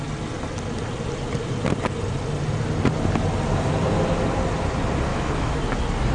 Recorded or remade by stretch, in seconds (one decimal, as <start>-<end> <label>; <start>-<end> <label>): 0.0-5.1 recorded; 5.1-5.6 remade; 5.6-6.1 recorded